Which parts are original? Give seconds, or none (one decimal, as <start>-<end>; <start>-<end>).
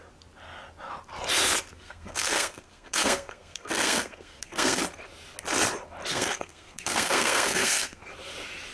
0.0-1.7; 4.8-6.1; 8.0-8.7